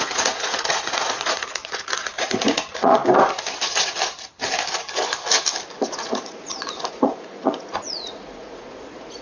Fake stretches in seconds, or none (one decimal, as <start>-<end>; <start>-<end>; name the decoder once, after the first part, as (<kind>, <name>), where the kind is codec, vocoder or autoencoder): 0.0-3.0 (vocoder, Vocos); 6.0-9.2